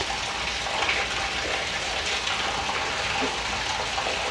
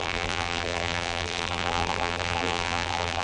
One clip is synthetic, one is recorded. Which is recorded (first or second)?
first